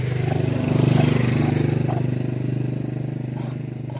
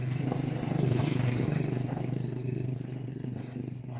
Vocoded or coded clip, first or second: second